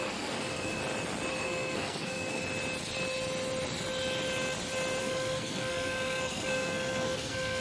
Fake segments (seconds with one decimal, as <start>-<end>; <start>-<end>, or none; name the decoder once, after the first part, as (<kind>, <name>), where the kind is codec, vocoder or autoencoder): 0.0-0.8 (codec, SNAC); 1.3-2.4; 5.0-7.6